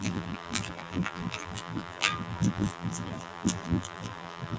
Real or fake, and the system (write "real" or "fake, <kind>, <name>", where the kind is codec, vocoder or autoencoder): fake, vocoder, BigVGAN v2